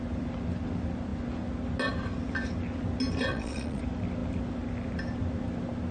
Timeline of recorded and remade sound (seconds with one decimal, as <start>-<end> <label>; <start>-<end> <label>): 0.0-3.3 recorded; 3.3-3.8 remade; 3.8-5.9 recorded